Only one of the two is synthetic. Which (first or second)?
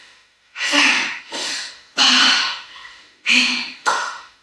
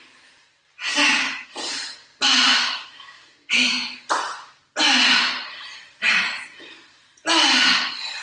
first